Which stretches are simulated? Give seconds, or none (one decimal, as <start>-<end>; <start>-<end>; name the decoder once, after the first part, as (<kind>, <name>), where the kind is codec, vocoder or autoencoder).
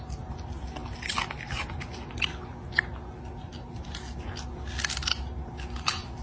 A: none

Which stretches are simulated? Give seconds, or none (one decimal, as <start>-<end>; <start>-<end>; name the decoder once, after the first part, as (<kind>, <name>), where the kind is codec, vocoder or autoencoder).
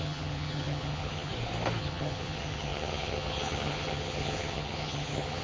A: 0.0-1.3 (vocoder, HiFi-GAN); 1.8-5.4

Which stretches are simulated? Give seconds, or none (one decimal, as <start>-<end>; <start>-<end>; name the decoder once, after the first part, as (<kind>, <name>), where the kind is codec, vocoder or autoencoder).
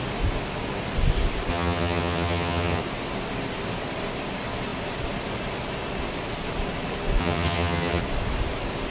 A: 1.5-2.8 (vocoder, HiFi-GAN); 7.2-8.0